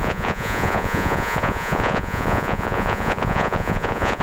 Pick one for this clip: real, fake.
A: fake